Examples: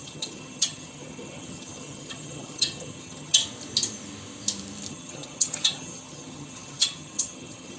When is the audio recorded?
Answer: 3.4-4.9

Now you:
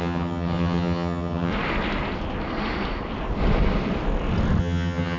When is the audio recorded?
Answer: 1.5-4.6

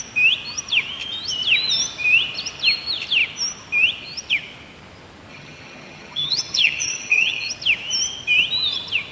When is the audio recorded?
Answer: 0.0-5.3; 7.5-9.1

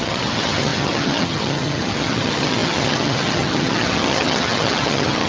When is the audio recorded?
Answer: none

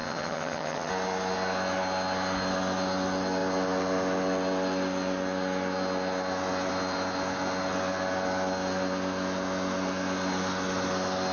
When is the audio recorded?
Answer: 0.9-11.3

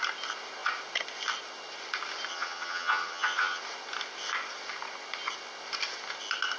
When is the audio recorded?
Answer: 0.0-2.3; 3.6-6.6

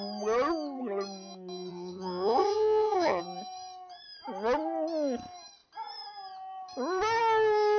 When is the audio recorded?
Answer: 0.0-1.7; 3.2-7.8